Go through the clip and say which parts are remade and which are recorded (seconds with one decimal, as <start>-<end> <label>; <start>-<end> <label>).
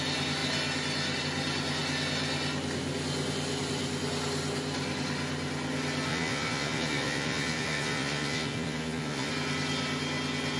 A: 0.0-6.1 recorded; 6.1-9.3 remade; 9.3-10.6 recorded